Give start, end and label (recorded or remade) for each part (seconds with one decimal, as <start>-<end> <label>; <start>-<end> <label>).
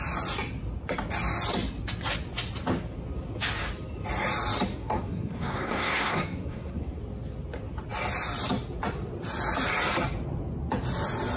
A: 0.0-4.7 recorded; 4.7-7.0 remade; 7.0-11.4 recorded